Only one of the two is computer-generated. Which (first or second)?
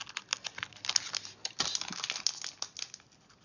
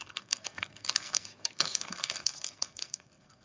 second